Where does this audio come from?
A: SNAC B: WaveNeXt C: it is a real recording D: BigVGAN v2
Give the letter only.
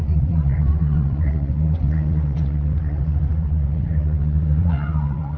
B